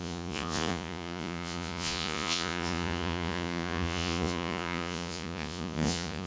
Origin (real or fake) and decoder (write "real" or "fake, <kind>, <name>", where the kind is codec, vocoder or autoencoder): fake, vocoder, Vocos